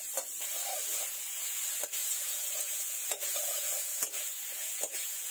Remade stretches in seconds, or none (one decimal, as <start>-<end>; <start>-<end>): 0.9-1.6; 2.0-5.3